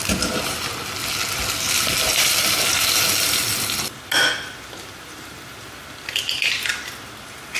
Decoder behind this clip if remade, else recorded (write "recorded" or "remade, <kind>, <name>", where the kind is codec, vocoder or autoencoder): recorded